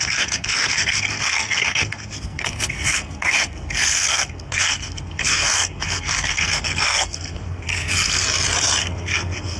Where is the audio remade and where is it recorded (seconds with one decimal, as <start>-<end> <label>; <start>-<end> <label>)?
0.0-8.2 remade; 8.2-8.8 recorded; 8.8-9.6 remade